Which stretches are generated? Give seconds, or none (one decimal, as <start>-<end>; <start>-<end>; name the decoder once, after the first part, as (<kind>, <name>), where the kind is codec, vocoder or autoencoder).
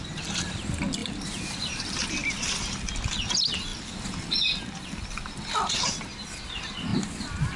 1.0-2.0 (vocoder, BigVGAN v2)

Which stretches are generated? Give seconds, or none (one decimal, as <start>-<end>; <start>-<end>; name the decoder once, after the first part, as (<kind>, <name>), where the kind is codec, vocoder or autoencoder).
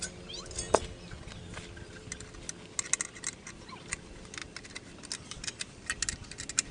none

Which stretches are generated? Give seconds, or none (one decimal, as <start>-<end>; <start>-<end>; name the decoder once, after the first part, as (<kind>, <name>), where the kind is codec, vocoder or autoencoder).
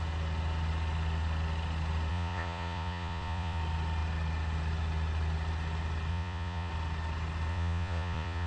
2.1-3.6 (vocoder, Vocos); 6.1-6.7; 7.5-8.5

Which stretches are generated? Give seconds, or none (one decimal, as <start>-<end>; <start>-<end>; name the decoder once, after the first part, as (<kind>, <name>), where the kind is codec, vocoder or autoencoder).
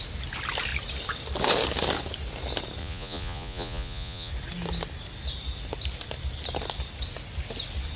2.8-4.3 (vocoder, Vocos)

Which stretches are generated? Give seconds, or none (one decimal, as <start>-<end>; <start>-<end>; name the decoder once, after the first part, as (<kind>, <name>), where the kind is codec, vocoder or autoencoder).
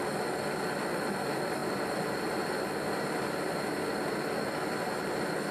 none